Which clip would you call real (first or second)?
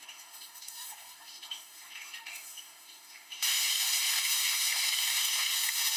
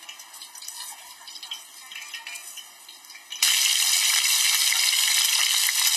second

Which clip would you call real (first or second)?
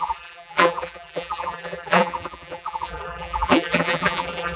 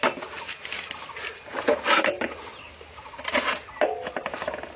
second